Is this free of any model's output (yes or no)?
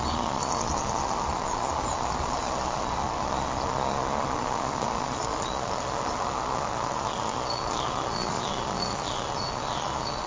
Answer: no